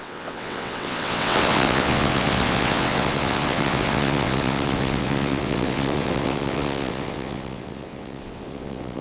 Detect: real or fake fake